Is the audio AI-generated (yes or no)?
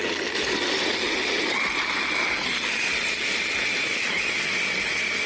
no